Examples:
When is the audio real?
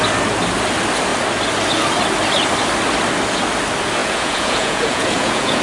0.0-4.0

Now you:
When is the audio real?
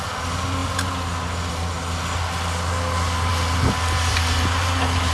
0.0-5.1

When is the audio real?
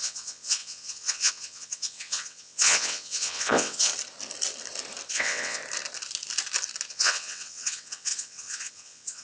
3.9-5.1; 5.6-6.9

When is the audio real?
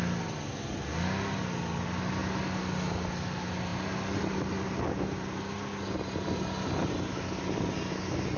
0.0-8.4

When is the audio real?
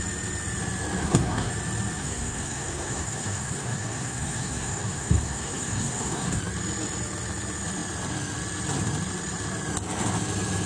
0.0-1.0; 1.5-2.0; 6.4-10.7